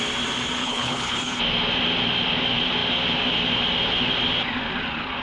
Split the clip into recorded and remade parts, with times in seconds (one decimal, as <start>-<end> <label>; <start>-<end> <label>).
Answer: 0.0-0.6 recorded; 0.6-1.4 remade; 1.4-5.2 recorded